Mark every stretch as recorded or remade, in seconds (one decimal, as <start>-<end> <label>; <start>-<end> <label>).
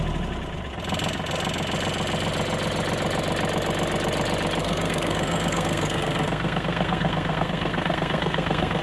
0.0-4.6 recorded; 4.6-8.8 remade